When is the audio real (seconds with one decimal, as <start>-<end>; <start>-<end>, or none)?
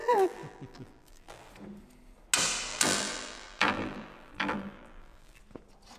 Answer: 1.5-2.7; 5.4-6.0